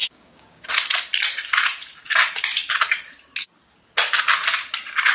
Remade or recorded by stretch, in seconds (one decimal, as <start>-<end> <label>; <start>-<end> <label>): 0.0-0.7 remade; 0.7-5.1 recorded